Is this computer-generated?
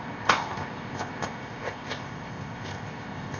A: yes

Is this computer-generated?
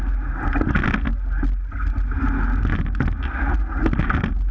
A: no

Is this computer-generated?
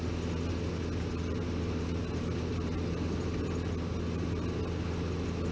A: no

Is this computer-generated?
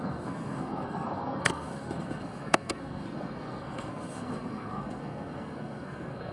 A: yes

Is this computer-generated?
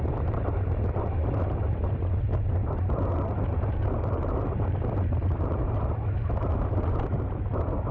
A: yes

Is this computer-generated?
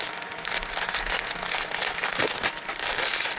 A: no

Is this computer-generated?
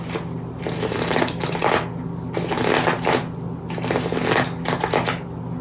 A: no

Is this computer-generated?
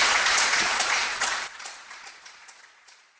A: yes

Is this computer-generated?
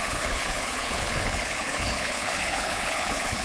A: yes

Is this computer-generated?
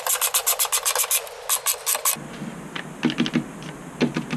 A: no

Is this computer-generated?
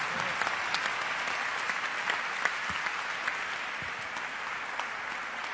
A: no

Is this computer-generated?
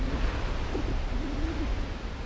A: no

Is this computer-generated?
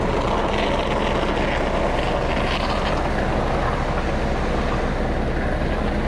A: no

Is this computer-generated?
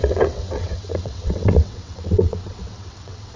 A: yes